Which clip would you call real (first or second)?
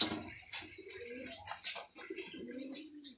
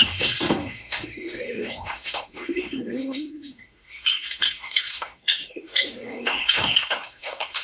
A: first